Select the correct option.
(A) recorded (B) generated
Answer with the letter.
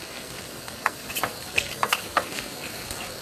B